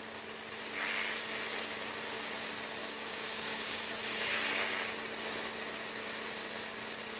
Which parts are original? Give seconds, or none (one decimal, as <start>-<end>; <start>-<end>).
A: 0.0-2.8; 3.9-7.2